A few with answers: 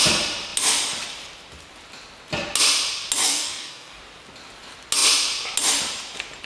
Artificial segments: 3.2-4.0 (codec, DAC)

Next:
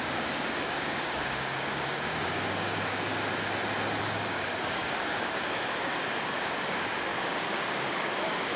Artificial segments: 0.0-3.1 (codec, DAC); 4.0-8.6

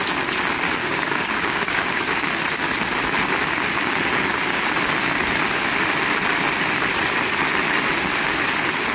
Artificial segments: 0.8-2.3 (codec, DAC)

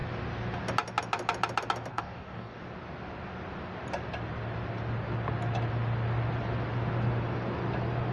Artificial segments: 1.9-2.6 (codec, DAC)

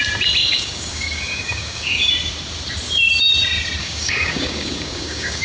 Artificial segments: 0.4-2.1 (codec, DAC); 3.8-5.4

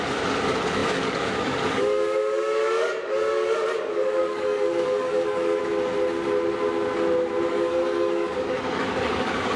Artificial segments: 0.0-5.6 (codec, DAC); 7.5-9.6